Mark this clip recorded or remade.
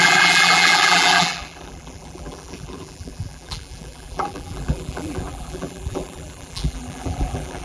remade